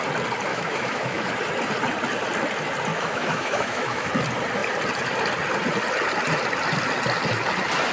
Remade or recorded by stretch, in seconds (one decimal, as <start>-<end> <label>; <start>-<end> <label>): 0.0-0.5 recorded; 0.5-1.3 remade; 1.3-2.9 recorded; 2.9-4.1 remade; 4.1-7.9 recorded